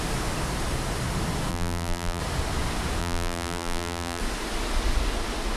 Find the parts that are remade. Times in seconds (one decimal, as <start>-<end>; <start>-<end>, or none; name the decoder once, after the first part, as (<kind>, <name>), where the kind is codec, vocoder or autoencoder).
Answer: 1.5-2.2 (vocoder, BigVGAN v2); 3.0-4.2